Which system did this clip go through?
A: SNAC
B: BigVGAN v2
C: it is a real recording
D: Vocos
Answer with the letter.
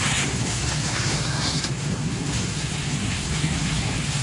A